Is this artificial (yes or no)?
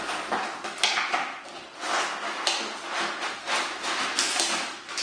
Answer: no